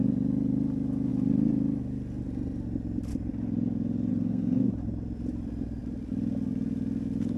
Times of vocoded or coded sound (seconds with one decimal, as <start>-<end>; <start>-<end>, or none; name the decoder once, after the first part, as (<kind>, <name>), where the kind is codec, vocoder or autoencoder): 4.1-4.7 (codec, SNAC)